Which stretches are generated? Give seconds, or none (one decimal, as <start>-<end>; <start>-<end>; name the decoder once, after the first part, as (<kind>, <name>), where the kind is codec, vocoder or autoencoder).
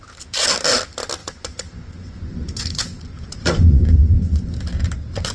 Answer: 1.2-4.4 (vocoder, Vocos)